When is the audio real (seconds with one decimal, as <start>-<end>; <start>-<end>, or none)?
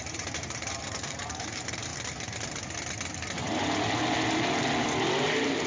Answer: 1.9-5.3